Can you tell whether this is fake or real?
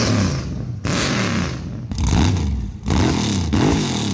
real